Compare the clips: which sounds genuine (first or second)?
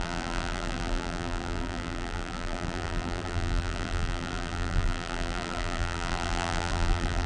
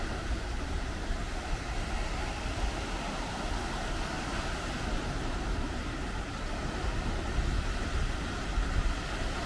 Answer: second